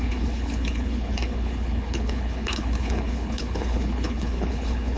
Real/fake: fake